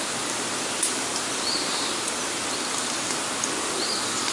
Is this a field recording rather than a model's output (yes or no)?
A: yes